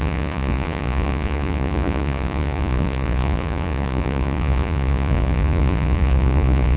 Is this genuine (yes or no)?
no